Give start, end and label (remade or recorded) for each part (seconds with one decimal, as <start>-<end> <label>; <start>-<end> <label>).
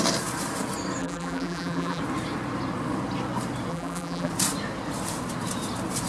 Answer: 0.0-1.0 recorded; 1.0-2.0 remade; 2.0-3.7 recorded; 3.7-4.3 remade; 4.3-6.1 recorded